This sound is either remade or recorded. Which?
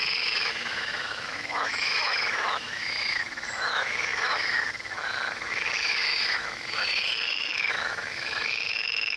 remade